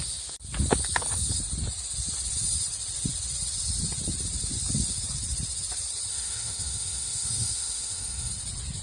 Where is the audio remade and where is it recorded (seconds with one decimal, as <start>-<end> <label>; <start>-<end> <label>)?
0.0-6.1 recorded; 6.1-8.3 remade; 8.3-8.8 recorded